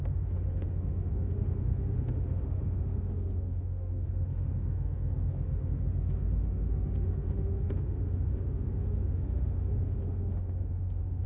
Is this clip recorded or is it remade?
remade